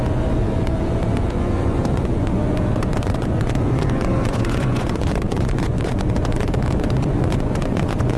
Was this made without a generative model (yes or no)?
no